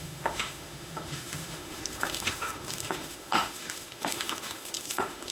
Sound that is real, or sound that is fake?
fake